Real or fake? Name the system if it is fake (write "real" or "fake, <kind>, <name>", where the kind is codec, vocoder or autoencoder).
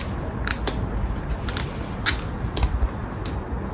real